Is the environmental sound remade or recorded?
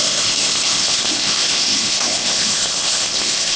remade